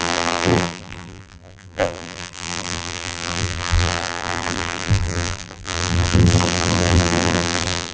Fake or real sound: fake